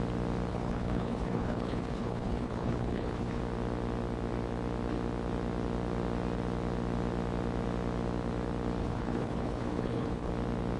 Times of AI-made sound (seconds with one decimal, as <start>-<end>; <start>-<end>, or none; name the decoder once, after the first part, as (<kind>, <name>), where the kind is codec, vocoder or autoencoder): 0.5-3.4 (codec, HILCodec); 8.8-10.3